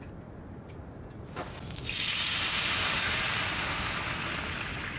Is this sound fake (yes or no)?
no